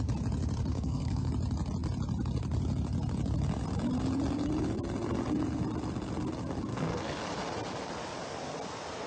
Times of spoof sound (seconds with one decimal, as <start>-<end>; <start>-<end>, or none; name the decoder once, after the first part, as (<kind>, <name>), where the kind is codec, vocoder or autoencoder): 0.7-1.3 (codec, SNAC); 6.7-7.2